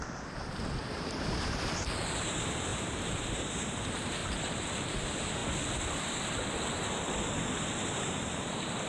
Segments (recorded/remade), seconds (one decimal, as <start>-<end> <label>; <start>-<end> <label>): 0.0-4.2 remade; 4.2-4.9 recorded; 4.9-5.4 remade; 5.4-8.2 recorded; 8.2-8.9 remade